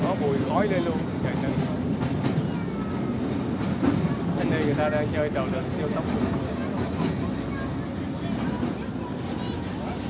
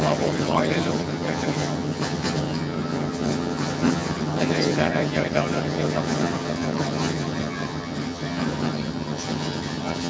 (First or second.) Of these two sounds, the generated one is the second